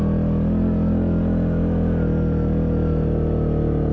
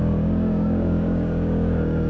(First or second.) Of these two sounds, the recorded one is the first